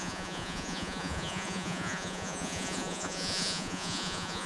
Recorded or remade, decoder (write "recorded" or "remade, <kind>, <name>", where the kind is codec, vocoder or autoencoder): remade, vocoder, Vocos